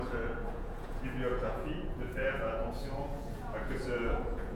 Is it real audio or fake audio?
fake